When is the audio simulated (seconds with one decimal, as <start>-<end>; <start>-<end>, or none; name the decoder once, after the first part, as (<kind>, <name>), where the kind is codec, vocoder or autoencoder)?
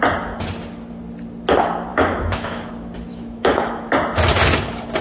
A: 1.9-2.7 (autoencoder, DAC-VAE); 3.1-3.9